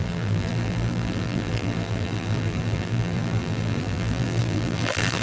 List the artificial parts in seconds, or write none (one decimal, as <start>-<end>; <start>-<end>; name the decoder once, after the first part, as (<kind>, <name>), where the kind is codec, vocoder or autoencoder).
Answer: 0.0-5.2 (vocoder, BigVGAN v2)